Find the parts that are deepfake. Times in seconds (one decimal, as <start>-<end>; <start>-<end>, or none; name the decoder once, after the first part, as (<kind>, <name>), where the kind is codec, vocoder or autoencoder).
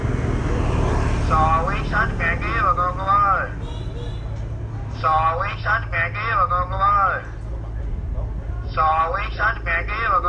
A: none